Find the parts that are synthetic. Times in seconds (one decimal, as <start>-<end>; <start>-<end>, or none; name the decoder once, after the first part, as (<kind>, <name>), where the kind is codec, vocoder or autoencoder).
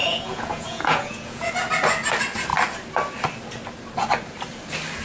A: 0.0-1.5 (vocoder, Vocos)